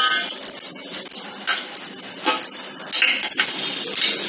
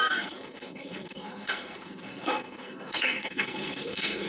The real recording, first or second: first